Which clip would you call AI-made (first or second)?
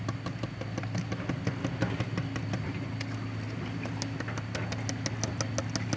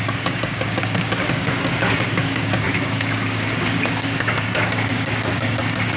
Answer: second